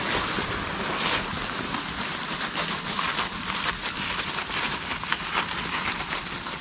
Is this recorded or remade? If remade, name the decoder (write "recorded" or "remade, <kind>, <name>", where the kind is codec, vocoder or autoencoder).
recorded